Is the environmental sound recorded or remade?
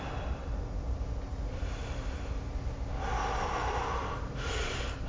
remade